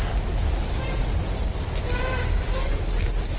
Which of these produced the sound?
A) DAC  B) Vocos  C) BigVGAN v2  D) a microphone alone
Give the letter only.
D